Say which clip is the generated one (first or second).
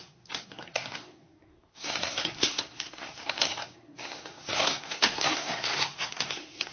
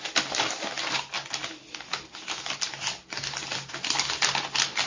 first